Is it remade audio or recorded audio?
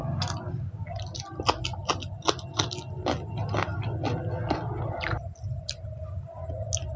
recorded